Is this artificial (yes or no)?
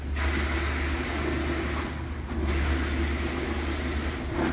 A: no